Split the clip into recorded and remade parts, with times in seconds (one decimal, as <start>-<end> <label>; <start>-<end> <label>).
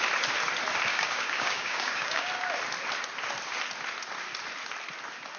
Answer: 0.0-0.9 recorded; 0.9-2.3 remade; 2.3-5.4 recorded